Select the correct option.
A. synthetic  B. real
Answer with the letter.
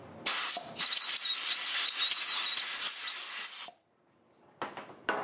B